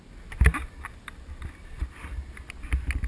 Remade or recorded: recorded